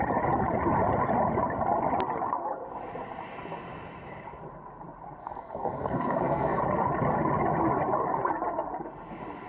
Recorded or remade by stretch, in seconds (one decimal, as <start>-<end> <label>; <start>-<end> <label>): 0.0-5.2 recorded; 5.2-6.6 remade; 6.6-9.5 recorded